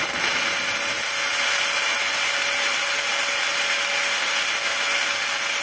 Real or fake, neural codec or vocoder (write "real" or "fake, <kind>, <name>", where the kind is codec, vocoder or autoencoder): real